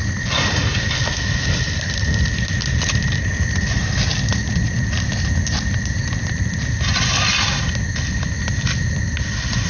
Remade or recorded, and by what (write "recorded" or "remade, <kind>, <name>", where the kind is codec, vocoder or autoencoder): recorded